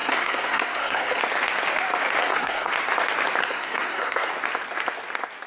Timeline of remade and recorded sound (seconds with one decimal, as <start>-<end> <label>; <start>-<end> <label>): 0.0-1.2 remade; 1.2-2.2 recorded; 2.2-2.7 remade; 2.7-3.4 recorded; 3.4-4.3 remade; 4.3-5.5 recorded